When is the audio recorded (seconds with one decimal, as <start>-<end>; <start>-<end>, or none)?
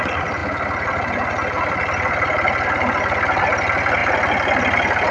0.0-5.1